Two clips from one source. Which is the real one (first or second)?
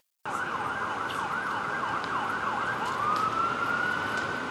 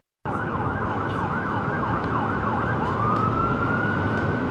first